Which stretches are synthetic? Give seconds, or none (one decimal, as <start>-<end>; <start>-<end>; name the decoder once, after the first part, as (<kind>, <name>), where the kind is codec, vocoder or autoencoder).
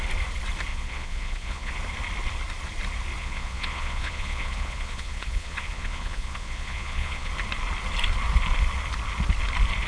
0.7-1.7 (vocoder, Vocos); 3.2-7.3